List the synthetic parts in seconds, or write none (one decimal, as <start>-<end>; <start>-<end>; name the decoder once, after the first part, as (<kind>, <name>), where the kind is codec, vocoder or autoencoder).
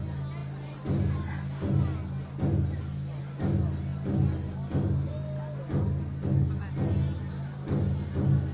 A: none